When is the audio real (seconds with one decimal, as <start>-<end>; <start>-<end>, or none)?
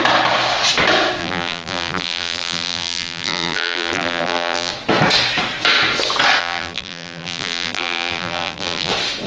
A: 0.0-1.2; 4.7-6.4; 8.9-9.3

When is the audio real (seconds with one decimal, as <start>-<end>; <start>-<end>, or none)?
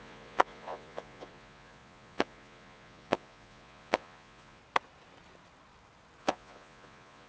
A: 4.6-6.2